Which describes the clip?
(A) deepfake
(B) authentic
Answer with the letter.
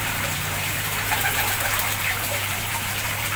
A